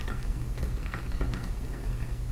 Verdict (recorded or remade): remade